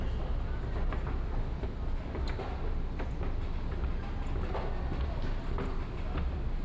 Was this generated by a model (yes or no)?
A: no